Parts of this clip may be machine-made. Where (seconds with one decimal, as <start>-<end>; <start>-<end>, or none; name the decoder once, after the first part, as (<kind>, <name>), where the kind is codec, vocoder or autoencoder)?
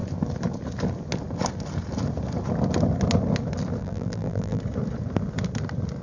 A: 3.8-4.6 (vocoder, BigVGAN v2)